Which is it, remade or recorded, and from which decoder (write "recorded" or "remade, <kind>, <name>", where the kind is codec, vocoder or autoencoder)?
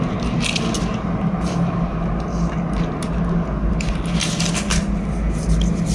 recorded